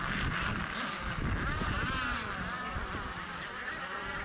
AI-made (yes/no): yes